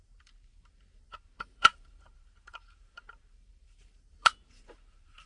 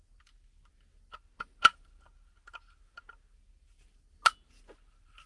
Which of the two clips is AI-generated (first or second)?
first